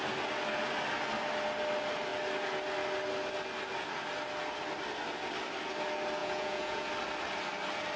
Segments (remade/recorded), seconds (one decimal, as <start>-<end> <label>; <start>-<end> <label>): 0.0-6.2 recorded; 6.2-6.9 remade; 6.9-8.0 recorded